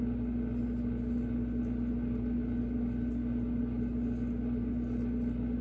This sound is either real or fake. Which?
real